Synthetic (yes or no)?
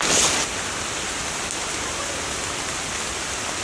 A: no